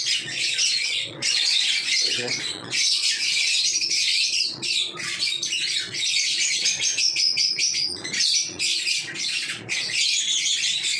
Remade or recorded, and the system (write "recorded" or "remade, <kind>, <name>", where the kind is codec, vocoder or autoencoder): remade, vocoder, Vocos